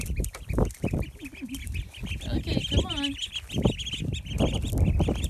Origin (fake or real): real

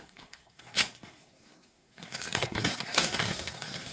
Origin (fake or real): fake